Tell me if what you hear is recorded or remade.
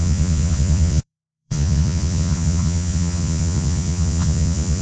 remade